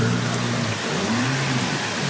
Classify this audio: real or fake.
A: real